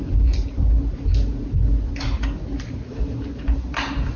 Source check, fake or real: real